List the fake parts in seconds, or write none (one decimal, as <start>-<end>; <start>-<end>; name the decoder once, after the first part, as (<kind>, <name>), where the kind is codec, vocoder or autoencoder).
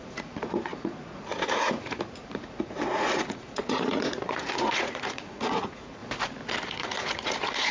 0.0-6.0 (vocoder, Vocos); 6.7-7.7